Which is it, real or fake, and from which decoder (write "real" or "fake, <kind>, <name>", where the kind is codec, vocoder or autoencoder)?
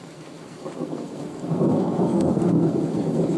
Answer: fake, codec, SNAC